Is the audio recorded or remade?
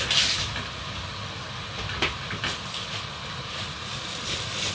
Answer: recorded